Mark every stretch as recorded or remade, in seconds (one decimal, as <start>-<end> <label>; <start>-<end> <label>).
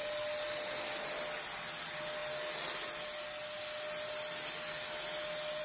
0.0-5.6 recorded